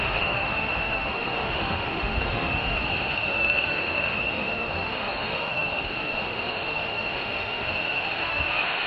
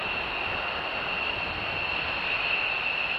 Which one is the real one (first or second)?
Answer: second